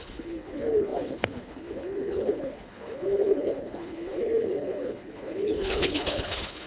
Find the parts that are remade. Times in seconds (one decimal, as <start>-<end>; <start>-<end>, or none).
0.0-6.7